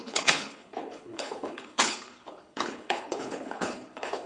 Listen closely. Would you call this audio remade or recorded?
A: remade